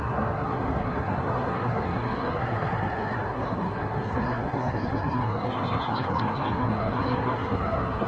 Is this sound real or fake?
fake